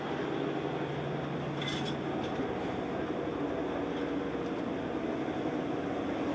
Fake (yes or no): no